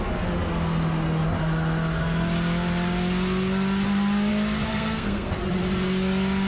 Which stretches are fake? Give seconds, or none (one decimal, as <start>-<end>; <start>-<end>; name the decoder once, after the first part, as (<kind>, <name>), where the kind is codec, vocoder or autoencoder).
4.7-5.3 (codec, SNAC)